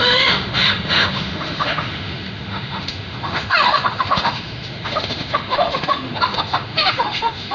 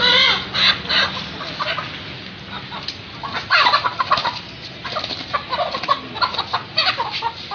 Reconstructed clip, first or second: first